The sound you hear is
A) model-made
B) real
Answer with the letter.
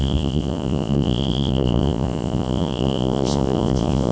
A